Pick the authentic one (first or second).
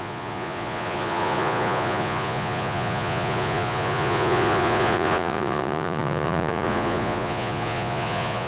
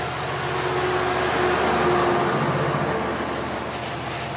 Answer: second